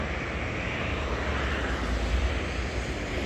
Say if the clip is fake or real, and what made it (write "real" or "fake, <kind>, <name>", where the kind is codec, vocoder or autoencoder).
real